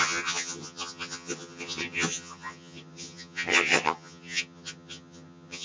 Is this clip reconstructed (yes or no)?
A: yes